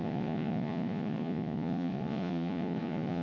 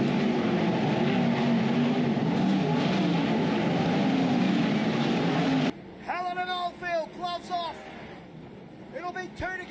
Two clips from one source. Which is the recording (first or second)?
second